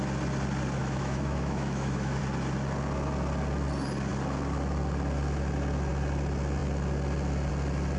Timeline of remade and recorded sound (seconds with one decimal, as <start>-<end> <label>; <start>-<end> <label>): 0.0-0.8 recorded; 0.8-2.2 remade; 2.2-8.0 recorded